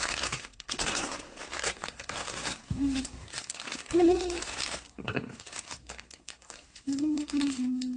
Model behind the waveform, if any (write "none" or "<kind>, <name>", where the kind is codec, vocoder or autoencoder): codec, SNAC